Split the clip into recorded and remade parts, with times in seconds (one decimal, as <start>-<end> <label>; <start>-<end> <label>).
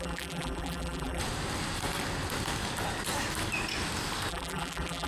0.0-1.2 remade; 1.2-4.3 recorded; 4.3-5.1 remade